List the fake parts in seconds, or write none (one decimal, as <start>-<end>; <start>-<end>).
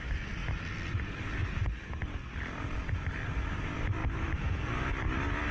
none